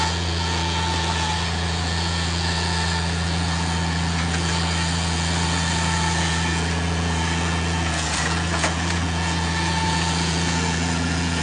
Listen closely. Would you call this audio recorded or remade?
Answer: remade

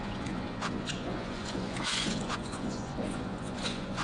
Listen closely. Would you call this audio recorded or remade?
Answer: remade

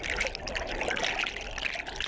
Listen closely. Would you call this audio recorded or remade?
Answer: recorded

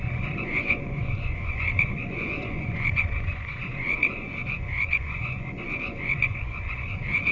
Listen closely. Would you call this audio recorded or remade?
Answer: remade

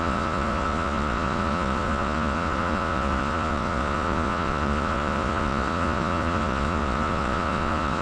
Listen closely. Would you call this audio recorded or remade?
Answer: remade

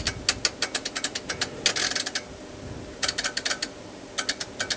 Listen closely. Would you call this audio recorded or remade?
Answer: recorded